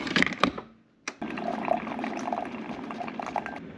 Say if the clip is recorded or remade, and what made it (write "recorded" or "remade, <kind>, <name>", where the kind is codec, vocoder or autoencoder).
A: recorded